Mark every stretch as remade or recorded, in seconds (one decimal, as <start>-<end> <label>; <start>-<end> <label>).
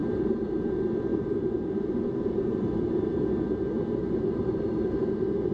0.0-0.6 remade; 0.6-1.1 recorded; 1.1-3.1 remade; 3.1-4.0 recorded; 4.0-5.1 remade; 5.1-5.5 recorded